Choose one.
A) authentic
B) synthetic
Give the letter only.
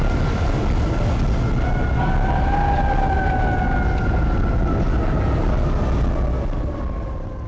A